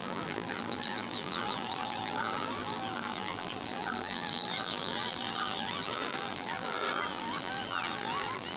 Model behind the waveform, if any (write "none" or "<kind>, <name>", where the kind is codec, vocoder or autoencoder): vocoder, BigVGAN v2